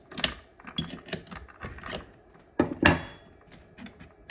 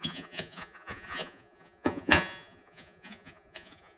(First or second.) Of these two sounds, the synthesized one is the second